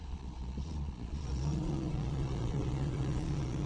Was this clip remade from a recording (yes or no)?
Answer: yes